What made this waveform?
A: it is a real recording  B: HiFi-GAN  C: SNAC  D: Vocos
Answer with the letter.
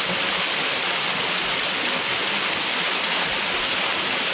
A